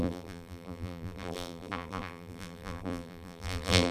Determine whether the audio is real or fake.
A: fake